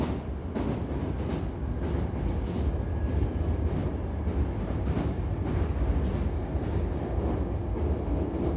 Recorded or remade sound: recorded